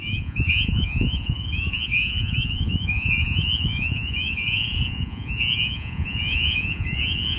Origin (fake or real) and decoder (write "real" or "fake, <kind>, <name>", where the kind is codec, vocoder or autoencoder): fake, vocoder, Vocos